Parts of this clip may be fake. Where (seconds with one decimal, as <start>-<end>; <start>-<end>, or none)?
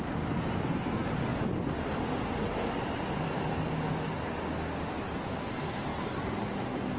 none